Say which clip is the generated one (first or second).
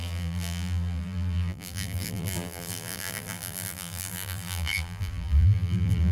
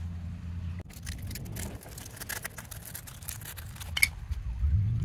first